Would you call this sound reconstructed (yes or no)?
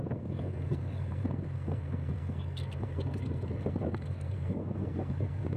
yes